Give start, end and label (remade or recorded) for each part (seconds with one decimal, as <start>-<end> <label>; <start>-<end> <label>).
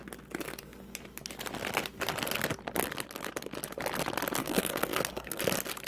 0.0-4.4 recorded; 4.4-5.4 remade; 5.4-5.9 recorded